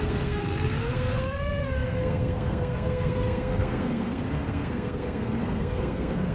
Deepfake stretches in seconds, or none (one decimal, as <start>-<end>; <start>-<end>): 0.0-6.3